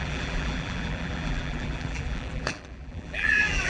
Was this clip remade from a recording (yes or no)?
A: yes